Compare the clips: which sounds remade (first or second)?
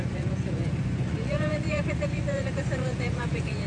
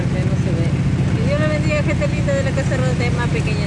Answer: first